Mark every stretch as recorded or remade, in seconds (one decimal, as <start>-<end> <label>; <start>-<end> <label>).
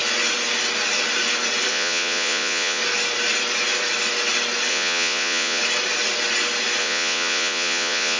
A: 0.0-1.7 recorded; 1.7-2.8 remade; 2.8-4.7 recorded; 4.7-5.6 remade; 5.6-6.8 recorded; 6.8-8.2 remade